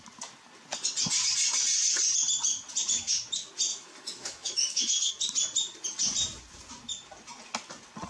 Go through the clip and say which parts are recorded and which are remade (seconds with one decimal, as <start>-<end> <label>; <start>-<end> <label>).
0.0-3.7 recorded; 3.7-5.1 remade; 5.1-8.1 recorded